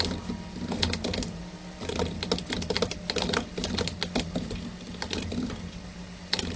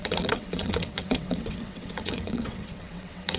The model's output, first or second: second